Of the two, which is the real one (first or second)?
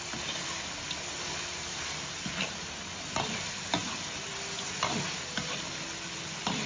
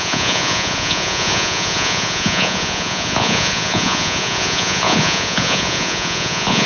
first